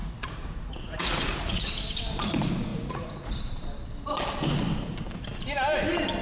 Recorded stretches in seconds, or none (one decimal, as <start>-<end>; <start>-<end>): 1.7-2.7; 3.3-6.2